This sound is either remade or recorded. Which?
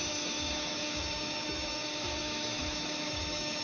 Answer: remade